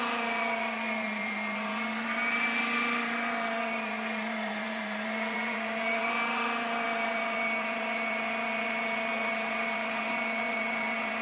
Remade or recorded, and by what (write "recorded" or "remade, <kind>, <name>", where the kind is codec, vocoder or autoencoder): remade, vocoder, BigVGAN v2